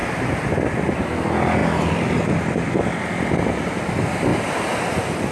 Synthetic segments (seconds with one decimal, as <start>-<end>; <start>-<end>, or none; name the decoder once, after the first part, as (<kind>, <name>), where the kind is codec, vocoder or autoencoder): none